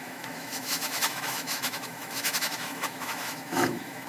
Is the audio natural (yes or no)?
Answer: no